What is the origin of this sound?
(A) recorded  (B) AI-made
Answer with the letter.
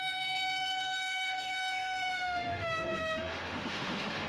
B